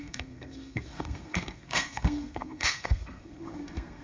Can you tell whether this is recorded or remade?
remade